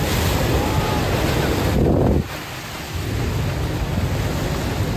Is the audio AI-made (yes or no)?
no